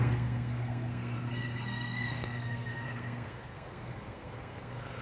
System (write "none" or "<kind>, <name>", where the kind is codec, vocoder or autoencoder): codec, SNAC